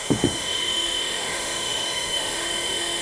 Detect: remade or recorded remade